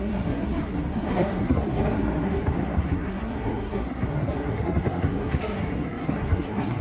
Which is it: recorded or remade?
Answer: remade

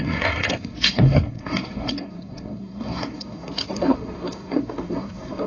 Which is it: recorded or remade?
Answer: remade